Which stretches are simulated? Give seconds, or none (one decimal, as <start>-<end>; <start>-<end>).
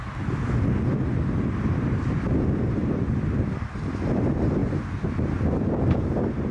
2.8-3.9